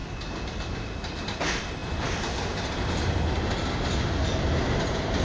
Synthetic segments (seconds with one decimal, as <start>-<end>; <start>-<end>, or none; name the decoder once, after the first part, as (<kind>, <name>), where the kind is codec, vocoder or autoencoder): none